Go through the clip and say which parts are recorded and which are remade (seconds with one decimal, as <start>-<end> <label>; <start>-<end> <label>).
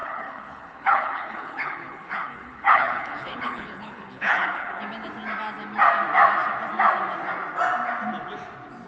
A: 0.0-4.8 remade; 4.8-8.9 recorded